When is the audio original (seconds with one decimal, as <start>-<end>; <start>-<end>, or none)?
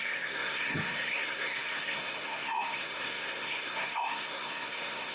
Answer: none